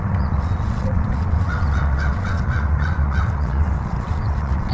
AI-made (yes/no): yes